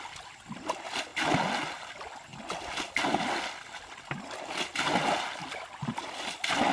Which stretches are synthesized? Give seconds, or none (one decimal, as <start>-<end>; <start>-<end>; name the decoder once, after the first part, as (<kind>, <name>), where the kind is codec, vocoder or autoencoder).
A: none